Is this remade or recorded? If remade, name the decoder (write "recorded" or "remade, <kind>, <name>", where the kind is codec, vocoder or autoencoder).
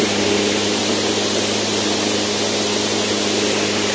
recorded